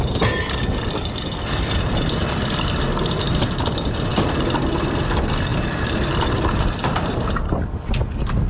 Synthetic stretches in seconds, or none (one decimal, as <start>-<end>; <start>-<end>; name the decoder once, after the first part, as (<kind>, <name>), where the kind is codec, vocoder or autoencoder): 5.5-6.6 (vocoder, BigVGAN v2)